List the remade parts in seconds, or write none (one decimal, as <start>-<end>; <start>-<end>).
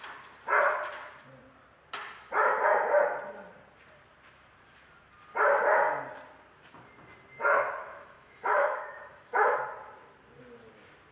7.8-9.6